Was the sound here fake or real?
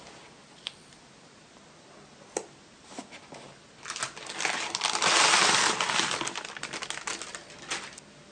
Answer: real